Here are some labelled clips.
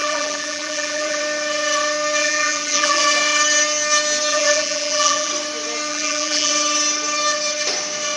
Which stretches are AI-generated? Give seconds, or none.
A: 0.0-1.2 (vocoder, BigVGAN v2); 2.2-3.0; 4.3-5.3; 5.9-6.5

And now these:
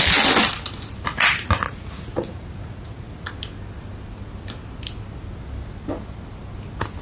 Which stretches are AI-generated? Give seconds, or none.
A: 1.1-3.3 (vocoder, Vocos)

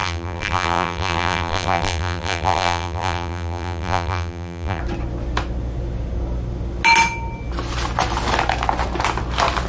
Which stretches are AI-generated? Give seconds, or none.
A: 0.0-4.8 (vocoder, BigVGAN v2)

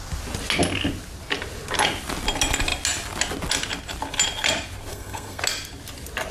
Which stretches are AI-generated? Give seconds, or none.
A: 4.9-5.4 (codec, SNAC)

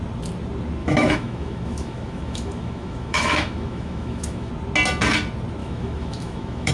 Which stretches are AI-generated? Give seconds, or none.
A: 0.8-4.5 (autoencoder, DAC-VAE); 5.6-6.7

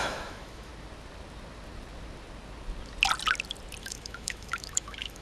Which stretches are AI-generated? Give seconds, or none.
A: 0.0-0.7 (autoencoder, DAC-VAE); 3.8-5.2